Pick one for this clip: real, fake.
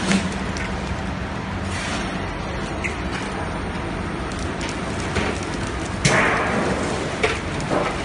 real